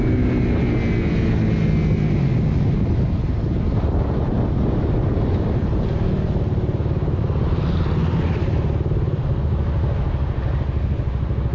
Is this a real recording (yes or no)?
yes